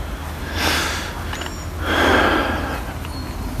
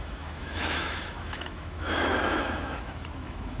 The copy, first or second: second